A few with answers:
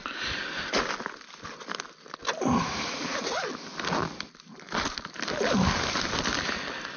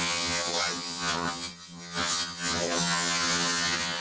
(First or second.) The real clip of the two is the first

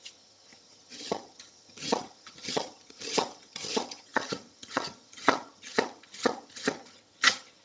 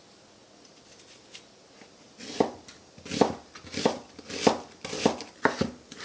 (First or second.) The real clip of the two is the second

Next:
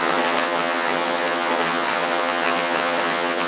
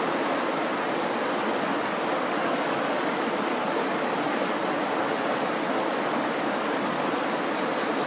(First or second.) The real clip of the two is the second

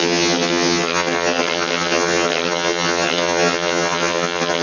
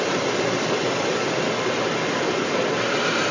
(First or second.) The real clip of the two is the second